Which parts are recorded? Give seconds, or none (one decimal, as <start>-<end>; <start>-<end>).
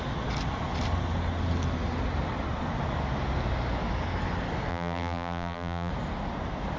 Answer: 0.0-4.7; 5.9-6.8